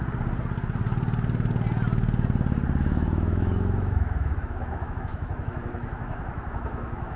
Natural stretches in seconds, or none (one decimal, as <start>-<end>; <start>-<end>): 0.0-2.8